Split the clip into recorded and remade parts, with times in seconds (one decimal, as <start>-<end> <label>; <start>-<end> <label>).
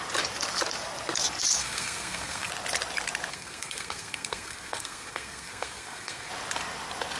0.0-1.6 recorded; 1.6-2.5 remade; 2.5-3.3 recorded; 3.3-6.3 remade; 6.3-7.2 recorded